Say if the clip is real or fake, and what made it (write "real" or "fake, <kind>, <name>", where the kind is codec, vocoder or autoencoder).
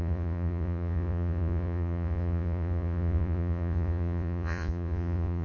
fake, vocoder, Vocos